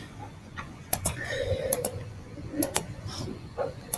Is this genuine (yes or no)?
no